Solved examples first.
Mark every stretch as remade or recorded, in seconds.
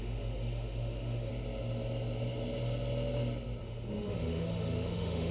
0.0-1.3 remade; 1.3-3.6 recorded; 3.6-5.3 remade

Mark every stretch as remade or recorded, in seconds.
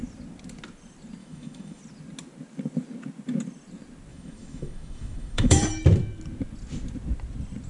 0.0-1.2 recorded; 1.2-1.8 remade; 1.8-4.1 recorded; 4.1-5.6 remade; 5.6-7.7 recorded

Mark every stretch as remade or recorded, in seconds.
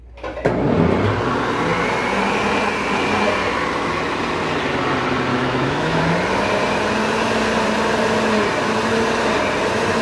0.0-5.3 recorded; 5.3-6.0 remade; 6.0-10.0 recorded